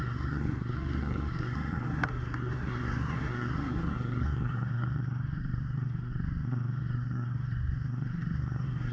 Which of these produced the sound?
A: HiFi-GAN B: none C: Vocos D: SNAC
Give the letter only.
D